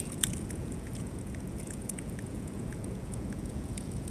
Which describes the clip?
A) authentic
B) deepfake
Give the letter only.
B